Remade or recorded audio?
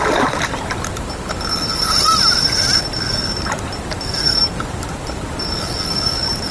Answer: recorded